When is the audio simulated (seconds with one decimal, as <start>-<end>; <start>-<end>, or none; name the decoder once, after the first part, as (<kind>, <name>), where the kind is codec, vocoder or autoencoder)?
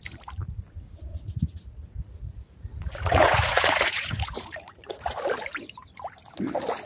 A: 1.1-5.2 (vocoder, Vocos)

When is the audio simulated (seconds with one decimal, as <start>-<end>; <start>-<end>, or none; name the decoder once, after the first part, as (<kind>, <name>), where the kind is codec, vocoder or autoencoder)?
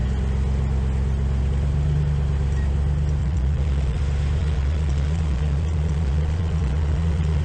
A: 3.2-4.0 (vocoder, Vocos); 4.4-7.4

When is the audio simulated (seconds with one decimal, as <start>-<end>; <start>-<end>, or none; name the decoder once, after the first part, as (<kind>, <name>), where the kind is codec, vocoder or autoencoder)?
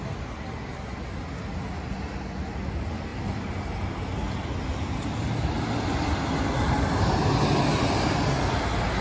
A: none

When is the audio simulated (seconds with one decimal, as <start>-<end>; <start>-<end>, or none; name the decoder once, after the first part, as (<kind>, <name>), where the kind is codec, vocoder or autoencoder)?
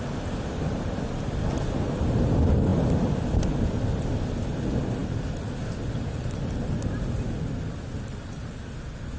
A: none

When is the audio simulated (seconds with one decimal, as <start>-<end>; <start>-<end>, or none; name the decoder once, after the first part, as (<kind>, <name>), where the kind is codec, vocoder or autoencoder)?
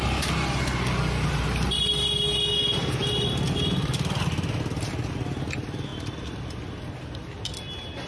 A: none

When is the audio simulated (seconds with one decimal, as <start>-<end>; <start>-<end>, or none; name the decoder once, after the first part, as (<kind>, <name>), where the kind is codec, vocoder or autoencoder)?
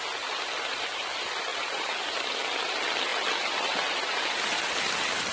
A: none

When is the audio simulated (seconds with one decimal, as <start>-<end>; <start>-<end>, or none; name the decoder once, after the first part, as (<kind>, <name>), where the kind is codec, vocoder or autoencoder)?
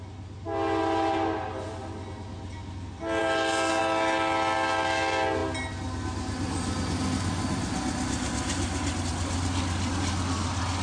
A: none